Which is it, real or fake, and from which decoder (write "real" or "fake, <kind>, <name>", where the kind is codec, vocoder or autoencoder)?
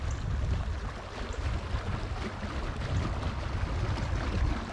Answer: real